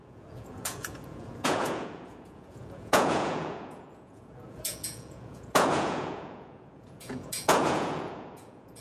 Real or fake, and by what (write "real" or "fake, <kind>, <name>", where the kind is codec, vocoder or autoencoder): fake, vocoder, Vocos